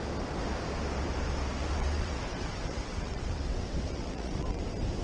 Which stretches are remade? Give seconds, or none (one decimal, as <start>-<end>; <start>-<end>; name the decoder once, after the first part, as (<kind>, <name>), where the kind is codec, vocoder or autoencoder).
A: 1.6-4.6 (vocoder, WaveNeXt)